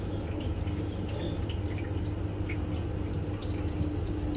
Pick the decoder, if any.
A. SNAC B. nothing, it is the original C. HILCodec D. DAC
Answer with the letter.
B